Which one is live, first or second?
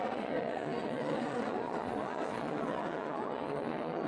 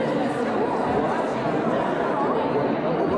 second